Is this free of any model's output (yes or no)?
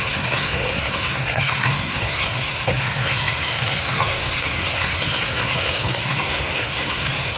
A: no